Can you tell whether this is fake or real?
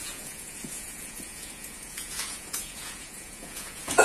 fake